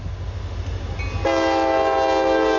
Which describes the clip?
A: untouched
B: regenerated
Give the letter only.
A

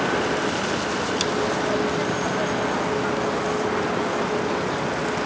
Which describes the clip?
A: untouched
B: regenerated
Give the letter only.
A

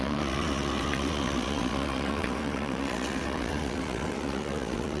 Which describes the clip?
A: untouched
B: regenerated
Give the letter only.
B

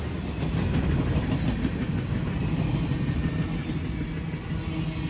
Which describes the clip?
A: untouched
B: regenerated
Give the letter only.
A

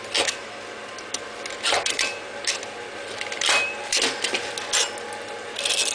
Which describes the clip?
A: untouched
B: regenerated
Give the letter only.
A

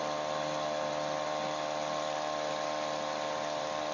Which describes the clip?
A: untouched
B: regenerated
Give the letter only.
A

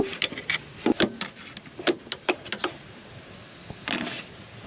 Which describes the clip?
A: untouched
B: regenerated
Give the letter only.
A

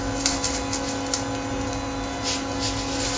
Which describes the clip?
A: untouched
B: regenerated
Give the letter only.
A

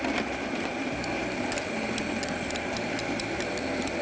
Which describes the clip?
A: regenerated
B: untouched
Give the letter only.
B